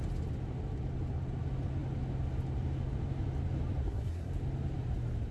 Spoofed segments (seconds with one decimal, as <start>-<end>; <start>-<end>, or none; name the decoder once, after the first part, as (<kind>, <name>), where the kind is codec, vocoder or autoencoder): 3.8-4.3 (codec, SNAC)